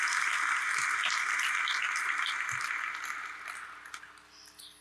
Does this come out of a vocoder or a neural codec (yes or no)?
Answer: no